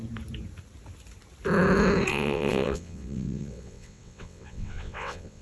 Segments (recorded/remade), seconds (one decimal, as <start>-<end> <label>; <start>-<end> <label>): 0.0-2.1 recorded; 2.1-5.4 remade